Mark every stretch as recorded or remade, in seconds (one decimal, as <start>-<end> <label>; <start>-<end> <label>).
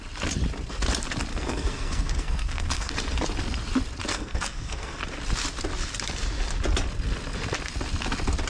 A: 0.0-1.3 recorded; 1.3-2.9 remade; 2.9-4.1 recorded; 4.1-5.0 remade; 5.0-8.5 recorded